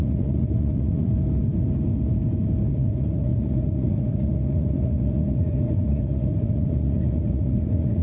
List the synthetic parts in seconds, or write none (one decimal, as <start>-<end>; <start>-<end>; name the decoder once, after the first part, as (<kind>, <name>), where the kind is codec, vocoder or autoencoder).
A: 0.0-1.1 (vocoder, Vocos); 2.7-8.0